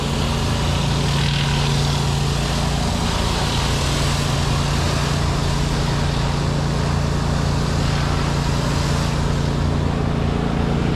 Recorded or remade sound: recorded